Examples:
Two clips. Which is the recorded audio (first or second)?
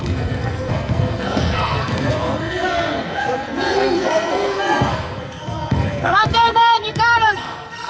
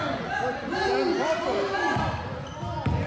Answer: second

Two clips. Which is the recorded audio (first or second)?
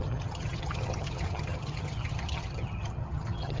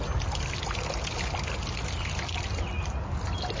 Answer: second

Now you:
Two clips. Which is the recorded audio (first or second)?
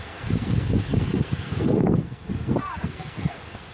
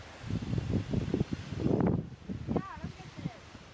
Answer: second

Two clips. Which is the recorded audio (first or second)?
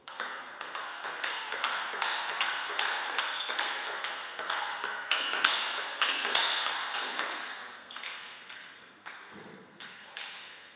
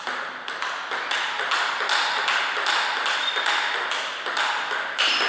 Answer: second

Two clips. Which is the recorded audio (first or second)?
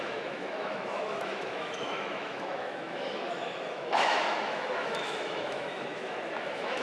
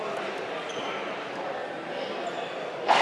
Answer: second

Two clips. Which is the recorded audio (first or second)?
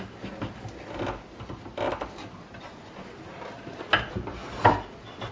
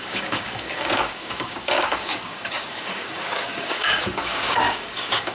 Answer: first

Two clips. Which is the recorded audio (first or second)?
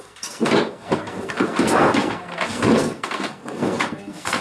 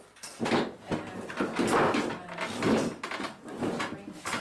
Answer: second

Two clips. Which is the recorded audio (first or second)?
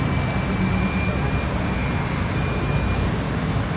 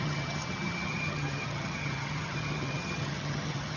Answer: first